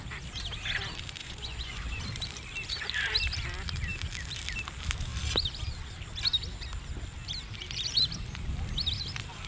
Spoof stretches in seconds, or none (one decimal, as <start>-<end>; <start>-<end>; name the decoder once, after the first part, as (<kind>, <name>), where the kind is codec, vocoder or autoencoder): 1.2-2.0 (vocoder, Vocos)